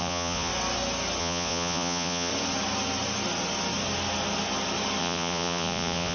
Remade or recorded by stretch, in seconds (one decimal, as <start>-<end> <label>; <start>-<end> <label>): 0.0-0.5 remade; 0.5-1.2 recorded; 1.2-2.3 remade; 2.3-5.0 recorded; 5.0-6.1 remade

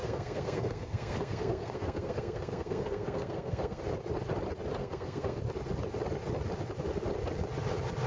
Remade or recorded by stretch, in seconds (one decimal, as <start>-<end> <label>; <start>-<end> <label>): 0.0-3.8 remade; 3.8-4.8 recorded; 4.8-5.4 remade; 5.4-8.1 recorded